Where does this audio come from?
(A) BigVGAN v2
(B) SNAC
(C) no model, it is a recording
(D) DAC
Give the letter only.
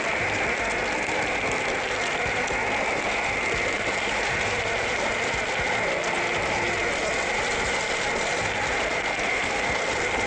C